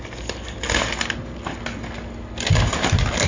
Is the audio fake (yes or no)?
no